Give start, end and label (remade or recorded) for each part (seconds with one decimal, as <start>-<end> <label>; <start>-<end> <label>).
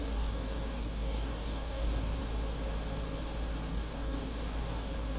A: 0.0-2.2 remade; 2.2-3.7 recorded; 3.7-5.2 remade